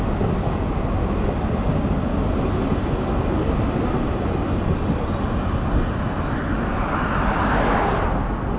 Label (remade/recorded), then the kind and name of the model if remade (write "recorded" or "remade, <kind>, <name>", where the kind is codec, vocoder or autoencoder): recorded